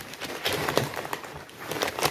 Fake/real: fake